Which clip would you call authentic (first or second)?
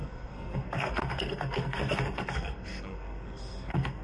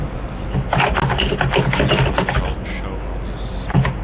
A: second